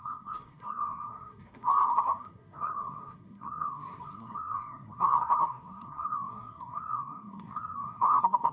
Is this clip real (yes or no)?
no